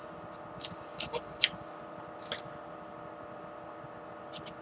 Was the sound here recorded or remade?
recorded